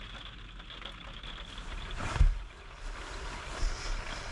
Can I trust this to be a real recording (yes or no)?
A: yes